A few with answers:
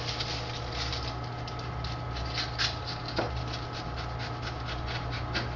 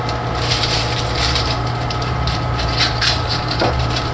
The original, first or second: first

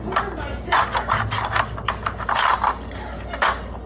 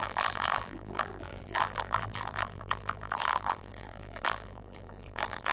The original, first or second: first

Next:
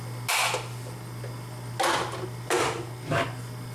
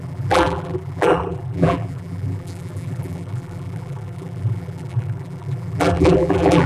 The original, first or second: first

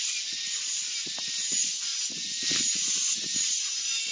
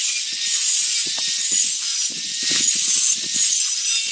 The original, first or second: second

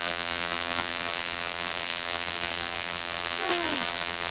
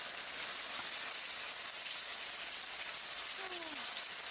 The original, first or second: second